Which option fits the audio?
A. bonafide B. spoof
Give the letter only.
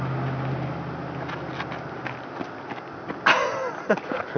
A